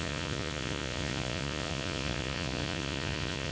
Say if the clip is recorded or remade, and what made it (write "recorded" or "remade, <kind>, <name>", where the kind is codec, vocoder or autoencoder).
remade, vocoder, Vocos